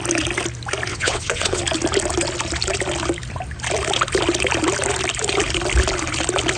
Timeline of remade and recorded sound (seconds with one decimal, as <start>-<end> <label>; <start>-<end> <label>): 0.0-0.9 recorded; 0.9-1.6 remade; 1.6-6.6 recorded